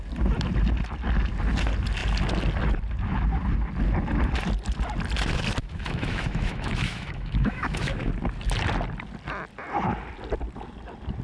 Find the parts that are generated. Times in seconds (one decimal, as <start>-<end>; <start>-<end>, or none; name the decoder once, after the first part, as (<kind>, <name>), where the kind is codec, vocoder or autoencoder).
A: 5.6-8.1 (autoencoder, DAC-VAE)